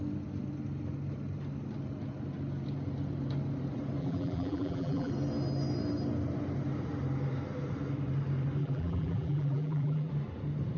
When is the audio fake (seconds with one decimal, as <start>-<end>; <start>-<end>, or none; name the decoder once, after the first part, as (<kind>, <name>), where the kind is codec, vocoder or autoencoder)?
4.0-5.1 (vocoder, BigVGAN v2); 8.6-10.1